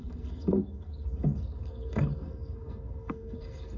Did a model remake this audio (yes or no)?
yes